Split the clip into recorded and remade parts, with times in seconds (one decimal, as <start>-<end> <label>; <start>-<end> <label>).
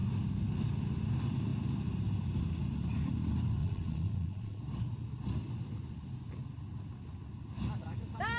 0.0-3.6 recorded; 3.6-4.6 remade; 4.6-8.4 recorded